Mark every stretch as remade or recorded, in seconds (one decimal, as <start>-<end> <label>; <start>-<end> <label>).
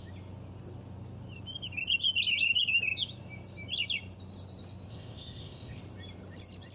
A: 0.0-4.9 recorded; 4.9-5.8 remade; 5.8-6.7 recorded